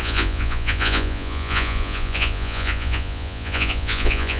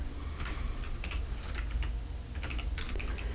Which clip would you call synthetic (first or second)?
first